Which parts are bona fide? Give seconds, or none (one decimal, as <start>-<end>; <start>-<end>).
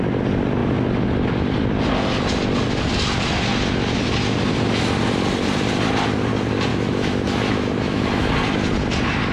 0.0-6.7; 8.3-9.3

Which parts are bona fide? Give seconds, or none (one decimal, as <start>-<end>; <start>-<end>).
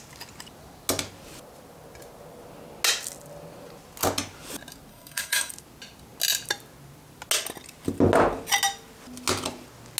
0.0-4.9; 5.5-10.0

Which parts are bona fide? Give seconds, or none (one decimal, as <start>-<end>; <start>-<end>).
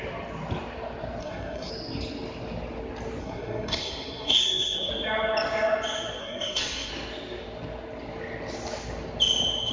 0.0-1.2; 1.7-3.2; 4.9-6.2; 6.9-9.7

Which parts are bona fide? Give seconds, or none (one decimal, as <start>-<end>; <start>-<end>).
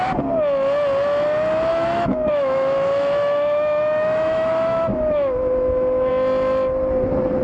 0.0-1.7; 6.1-7.4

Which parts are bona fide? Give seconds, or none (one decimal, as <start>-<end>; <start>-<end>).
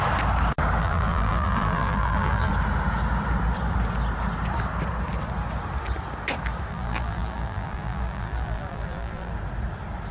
0.0-0.8; 2.5-6.7; 9.3-10.1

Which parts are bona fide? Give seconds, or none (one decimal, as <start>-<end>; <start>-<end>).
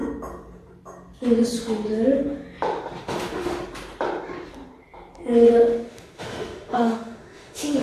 0.0-3.0; 3.6-5.9